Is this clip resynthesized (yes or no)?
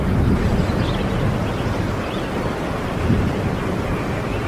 no